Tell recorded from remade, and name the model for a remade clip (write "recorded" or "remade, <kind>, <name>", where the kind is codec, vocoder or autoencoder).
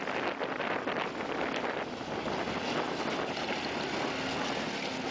recorded